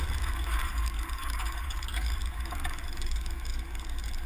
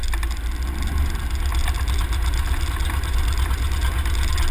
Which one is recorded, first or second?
second